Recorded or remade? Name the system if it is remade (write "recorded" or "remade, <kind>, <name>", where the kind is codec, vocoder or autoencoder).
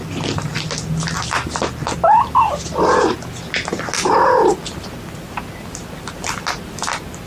recorded